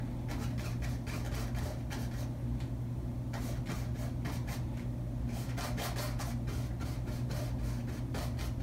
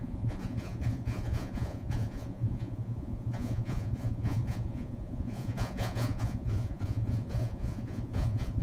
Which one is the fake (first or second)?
second